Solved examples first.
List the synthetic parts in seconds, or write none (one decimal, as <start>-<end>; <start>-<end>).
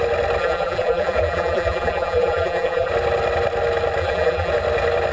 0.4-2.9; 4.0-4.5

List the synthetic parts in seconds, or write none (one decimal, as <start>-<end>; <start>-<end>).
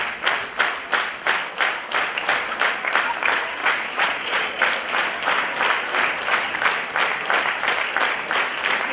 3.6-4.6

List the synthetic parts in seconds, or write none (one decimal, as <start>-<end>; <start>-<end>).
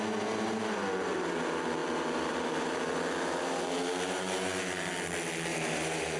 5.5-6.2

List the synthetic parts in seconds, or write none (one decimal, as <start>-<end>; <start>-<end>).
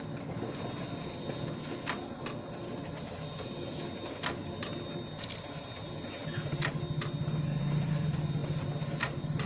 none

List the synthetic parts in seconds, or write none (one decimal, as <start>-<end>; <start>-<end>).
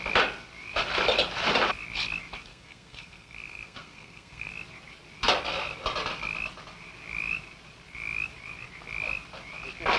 2.5-4.5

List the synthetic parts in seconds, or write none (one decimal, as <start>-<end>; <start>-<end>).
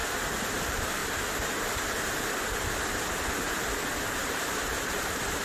0.5-1.0; 4.2-5.4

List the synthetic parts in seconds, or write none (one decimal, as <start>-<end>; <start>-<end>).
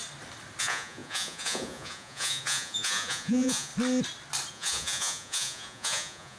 0.6-3.7; 4.5-6.4